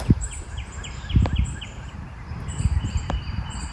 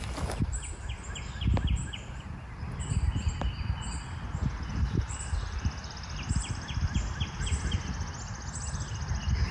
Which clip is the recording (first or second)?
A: second